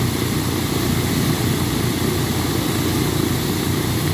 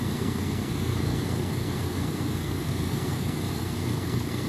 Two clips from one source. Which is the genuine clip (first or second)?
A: first